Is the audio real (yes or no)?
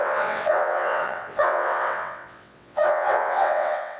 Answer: no